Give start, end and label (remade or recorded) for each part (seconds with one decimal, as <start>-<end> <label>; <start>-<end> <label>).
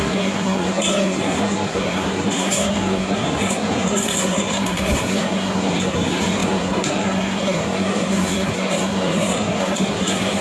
0.0-10.4 remade